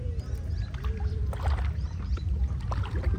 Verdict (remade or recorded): recorded